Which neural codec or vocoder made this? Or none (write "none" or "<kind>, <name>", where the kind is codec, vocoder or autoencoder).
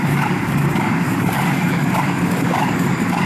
codec, DAC